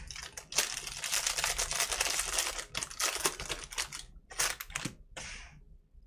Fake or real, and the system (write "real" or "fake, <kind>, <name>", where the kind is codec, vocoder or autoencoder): real